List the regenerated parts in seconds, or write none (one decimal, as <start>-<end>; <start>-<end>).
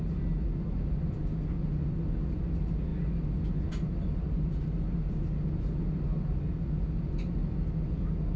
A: none